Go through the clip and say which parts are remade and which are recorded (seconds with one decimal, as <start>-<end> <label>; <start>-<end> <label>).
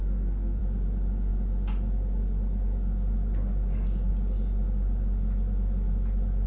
0.0-0.6 remade; 0.6-6.5 recorded